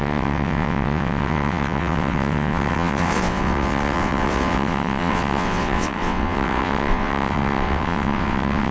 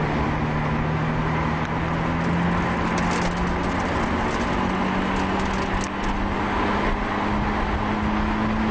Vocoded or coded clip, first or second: first